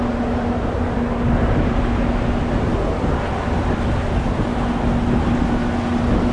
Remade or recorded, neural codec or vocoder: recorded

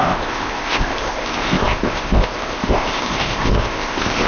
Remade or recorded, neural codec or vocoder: remade, codec, ZipCodec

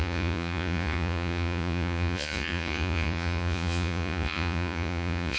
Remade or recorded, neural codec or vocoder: remade, vocoder, Vocos